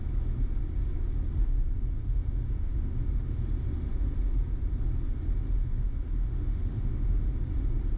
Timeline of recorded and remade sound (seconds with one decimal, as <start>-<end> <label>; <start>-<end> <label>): 0.0-2.0 recorded; 2.0-4.1 remade; 4.1-5.6 recorded; 5.6-7.2 remade; 7.2-8.0 recorded